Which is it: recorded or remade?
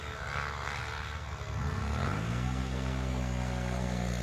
remade